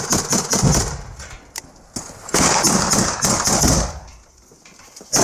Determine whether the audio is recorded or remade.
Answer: recorded